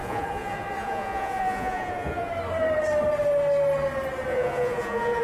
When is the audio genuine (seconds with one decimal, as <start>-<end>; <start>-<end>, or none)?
2.3-4.3